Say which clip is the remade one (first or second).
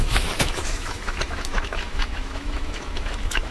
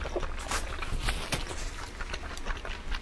first